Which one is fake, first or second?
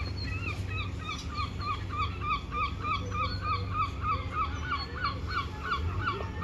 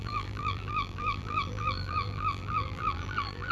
second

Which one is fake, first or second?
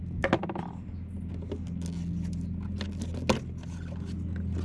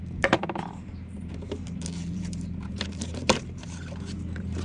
second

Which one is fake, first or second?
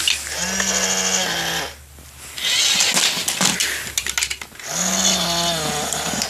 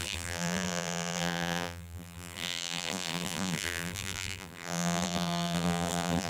second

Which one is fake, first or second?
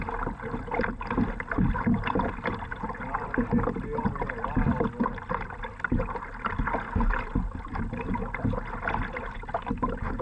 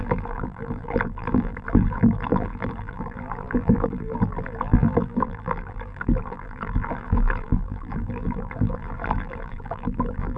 second